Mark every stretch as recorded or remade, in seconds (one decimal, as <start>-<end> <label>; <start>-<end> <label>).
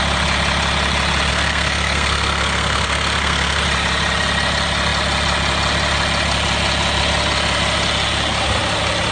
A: 0.0-1.3 recorded; 1.3-3.6 remade; 3.6-9.1 recorded